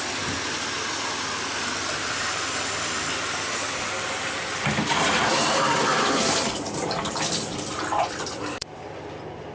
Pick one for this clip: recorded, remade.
remade